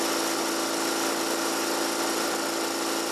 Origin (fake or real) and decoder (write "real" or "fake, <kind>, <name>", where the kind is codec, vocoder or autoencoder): real